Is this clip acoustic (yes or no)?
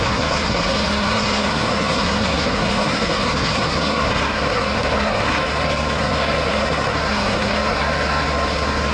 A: no